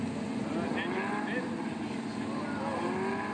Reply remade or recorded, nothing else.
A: recorded